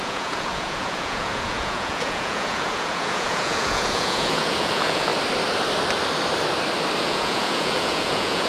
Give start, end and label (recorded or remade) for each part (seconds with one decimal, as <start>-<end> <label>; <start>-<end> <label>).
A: 0.0-5.1 remade; 5.1-7.0 recorded; 7.0-8.5 remade